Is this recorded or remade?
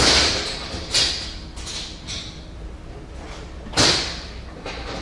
remade